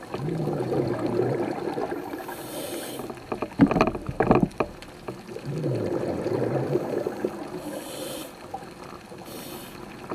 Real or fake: real